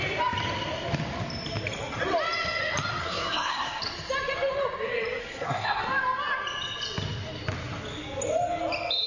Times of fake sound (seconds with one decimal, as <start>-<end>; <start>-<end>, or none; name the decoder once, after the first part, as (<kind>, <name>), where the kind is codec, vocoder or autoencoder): 3.0-3.8 (codec, SNAC); 5.2-5.8